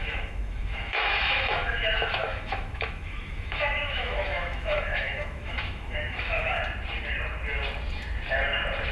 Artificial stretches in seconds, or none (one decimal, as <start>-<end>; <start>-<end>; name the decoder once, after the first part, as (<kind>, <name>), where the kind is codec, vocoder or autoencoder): 0.0-6.6 (autoencoder, DAC-VAE)